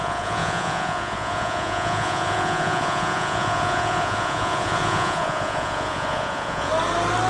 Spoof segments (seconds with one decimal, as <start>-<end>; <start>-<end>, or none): 0.0-6.7